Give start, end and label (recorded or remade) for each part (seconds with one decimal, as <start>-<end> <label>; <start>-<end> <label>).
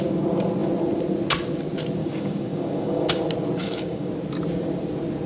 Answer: 0.0-2.0 recorded; 2.0-3.1 remade; 3.1-3.6 recorded; 3.6-4.1 remade; 4.1-5.3 recorded